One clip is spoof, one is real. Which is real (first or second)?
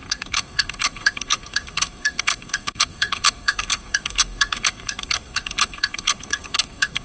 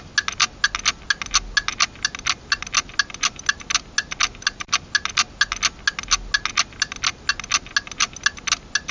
second